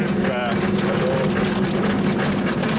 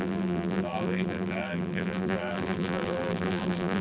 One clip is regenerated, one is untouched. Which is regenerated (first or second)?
second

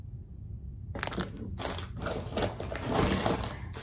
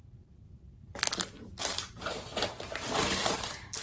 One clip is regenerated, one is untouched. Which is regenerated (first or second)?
second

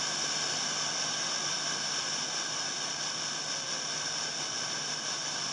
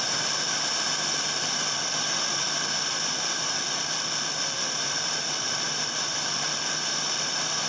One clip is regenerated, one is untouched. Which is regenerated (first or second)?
second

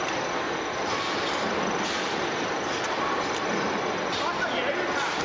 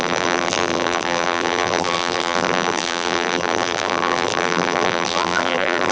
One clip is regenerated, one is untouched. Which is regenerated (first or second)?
second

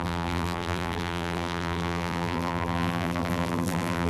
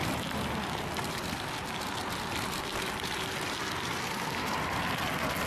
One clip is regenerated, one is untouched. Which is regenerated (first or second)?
first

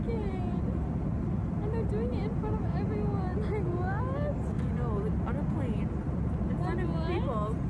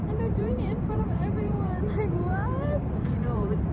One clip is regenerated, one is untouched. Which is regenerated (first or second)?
second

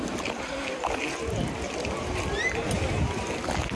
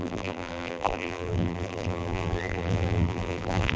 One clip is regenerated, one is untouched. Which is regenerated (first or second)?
second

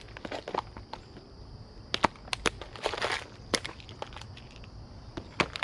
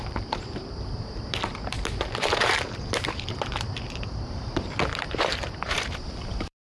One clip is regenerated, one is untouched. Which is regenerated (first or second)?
second